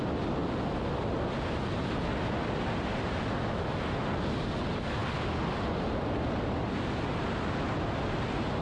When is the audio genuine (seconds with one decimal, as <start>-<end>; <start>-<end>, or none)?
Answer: 0.0-8.6